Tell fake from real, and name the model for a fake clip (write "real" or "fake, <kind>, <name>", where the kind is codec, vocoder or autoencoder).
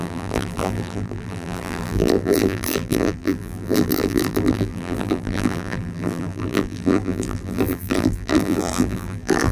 fake, vocoder, BigVGAN v2